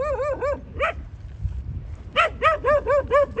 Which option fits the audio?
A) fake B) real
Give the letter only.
B